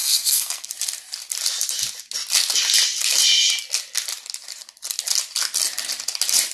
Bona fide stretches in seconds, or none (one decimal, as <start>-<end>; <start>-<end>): 0.7-6.5